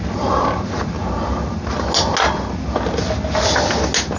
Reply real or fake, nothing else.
real